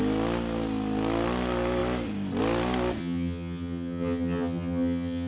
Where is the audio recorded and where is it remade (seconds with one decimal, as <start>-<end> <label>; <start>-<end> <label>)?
0.0-3.0 recorded; 3.0-5.3 remade